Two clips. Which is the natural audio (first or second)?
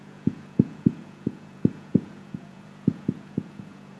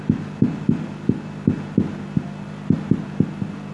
second